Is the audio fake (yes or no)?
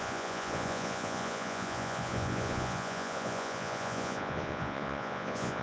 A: yes